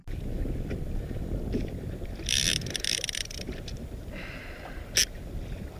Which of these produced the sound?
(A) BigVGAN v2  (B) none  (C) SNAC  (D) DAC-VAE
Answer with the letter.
B